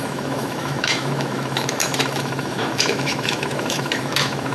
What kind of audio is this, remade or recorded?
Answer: remade